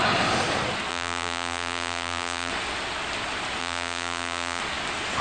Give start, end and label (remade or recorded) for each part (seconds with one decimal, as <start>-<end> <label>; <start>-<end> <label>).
0.0-0.9 recorded; 0.9-2.5 remade; 2.5-3.6 recorded; 3.6-4.6 remade; 4.6-5.2 recorded